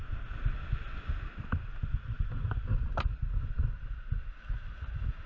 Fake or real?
real